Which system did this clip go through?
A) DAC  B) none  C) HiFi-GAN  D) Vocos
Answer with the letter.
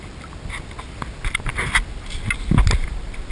B